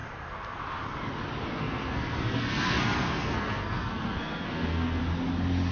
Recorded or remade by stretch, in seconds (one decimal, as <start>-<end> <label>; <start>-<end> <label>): 0.0-0.6 remade; 0.6-1.6 recorded; 1.6-5.0 remade; 5.0-5.7 recorded